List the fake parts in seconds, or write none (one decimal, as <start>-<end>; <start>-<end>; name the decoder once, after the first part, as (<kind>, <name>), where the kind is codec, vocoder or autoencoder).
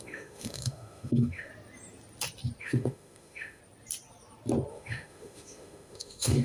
0.0-1.5 (autoencoder, DAC-VAE); 2.6-3.6; 4.7-6.4